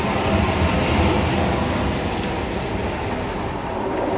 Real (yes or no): yes